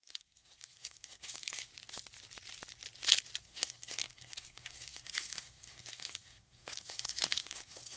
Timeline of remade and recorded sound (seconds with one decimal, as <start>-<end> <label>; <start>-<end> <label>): 0.0-1.7 remade; 1.7-3.4 recorded; 3.4-8.0 remade